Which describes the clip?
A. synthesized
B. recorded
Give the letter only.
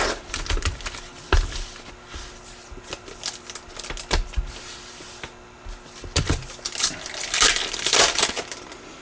B